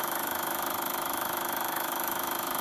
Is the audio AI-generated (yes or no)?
yes